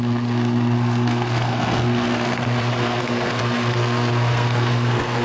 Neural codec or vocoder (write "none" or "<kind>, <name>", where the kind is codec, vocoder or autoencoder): codec, SNAC